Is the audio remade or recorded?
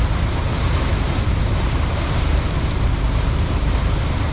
remade